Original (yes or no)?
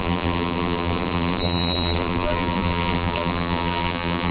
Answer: no